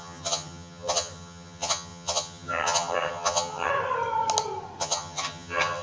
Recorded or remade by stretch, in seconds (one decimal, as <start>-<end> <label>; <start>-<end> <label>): 0.0-3.7 remade; 3.7-4.8 recorded; 4.8-5.8 remade